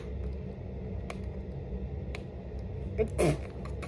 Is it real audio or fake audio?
real